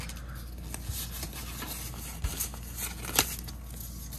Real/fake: real